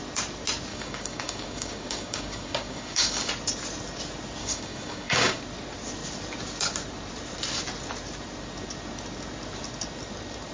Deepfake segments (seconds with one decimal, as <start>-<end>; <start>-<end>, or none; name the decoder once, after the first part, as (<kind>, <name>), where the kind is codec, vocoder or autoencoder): 0.7-3.3 (codec, DAC); 4.4-5.4

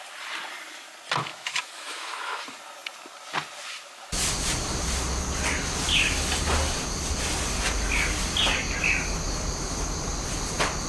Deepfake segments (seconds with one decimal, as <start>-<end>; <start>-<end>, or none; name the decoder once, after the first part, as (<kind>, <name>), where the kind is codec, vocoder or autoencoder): 1.3-2.4 (autoencoder, DAC-VAE)

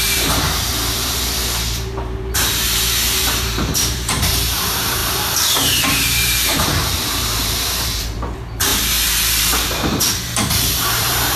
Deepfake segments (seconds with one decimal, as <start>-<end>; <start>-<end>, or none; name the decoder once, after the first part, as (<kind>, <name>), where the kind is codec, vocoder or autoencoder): 0.0-8.7 (vocoder, BigVGAN v2); 9.4-11.4

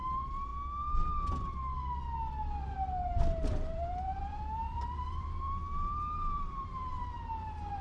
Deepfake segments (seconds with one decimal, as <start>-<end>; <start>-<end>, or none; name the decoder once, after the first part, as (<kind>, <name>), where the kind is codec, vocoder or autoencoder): 0.0-0.5 (vocoder, BigVGAN v2); 2.6-7.8

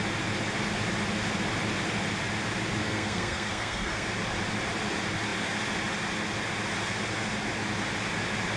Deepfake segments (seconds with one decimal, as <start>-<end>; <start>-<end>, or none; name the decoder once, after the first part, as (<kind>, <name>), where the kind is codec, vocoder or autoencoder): 2.8-4.1 (codec, SNAC)

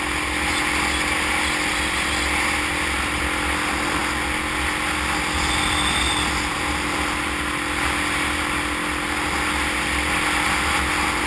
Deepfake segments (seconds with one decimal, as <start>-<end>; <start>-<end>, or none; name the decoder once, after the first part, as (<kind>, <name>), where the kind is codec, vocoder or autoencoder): none

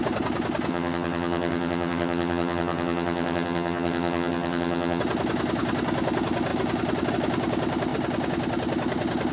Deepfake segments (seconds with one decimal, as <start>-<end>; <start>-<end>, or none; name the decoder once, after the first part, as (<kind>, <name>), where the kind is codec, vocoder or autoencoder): 0.7-5.0 (vocoder, HiFi-GAN)

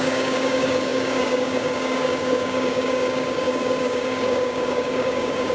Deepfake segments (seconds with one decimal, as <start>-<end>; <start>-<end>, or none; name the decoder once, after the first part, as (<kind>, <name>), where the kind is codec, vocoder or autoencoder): 0.0-5.5 (codec, DAC)